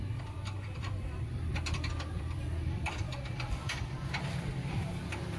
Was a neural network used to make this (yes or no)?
yes